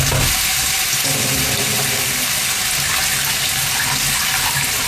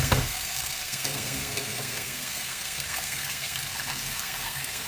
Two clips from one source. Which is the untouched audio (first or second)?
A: first